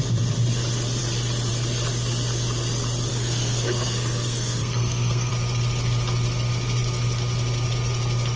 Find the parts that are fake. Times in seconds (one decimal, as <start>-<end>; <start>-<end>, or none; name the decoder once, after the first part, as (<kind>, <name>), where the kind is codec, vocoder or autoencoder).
3.1-5.3 (codec, SNAC)